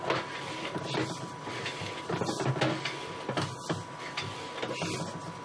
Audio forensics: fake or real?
real